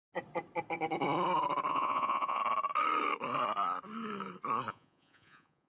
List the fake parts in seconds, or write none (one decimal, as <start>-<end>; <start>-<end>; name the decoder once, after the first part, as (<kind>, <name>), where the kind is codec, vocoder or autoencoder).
1.7-2.4 (vocoder, Vocos); 4.7-5.7